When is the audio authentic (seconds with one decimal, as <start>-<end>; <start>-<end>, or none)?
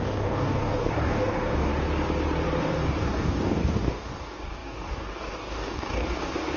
1.7-2.6